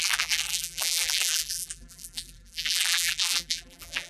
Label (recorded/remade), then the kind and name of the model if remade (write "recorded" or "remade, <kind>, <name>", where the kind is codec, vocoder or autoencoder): remade, vocoder, BigVGAN v2